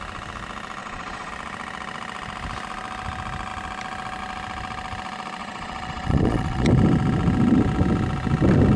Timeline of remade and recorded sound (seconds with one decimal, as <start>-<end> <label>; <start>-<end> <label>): 0.0-0.8 recorded; 0.8-1.3 remade; 1.3-5.4 recorded; 5.4-6.7 remade; 6.7-8.8 recorded